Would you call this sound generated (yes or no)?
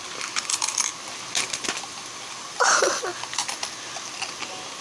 no